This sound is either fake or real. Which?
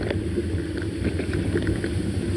real